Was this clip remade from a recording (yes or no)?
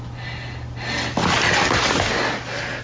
no